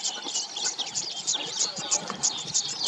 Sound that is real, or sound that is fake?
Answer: real